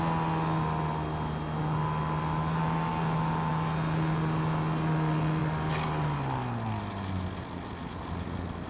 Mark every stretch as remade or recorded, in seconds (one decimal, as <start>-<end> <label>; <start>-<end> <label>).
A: 0.0-8.7 recorded